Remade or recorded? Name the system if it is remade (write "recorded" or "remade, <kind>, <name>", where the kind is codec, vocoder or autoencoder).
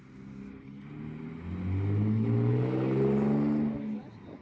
recorded